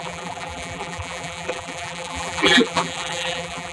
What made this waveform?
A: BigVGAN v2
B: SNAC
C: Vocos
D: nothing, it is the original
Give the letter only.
A